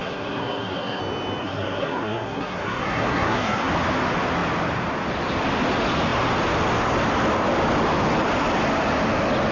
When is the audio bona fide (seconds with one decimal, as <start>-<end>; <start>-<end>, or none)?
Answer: 1.0-1.4; 3.7-9.5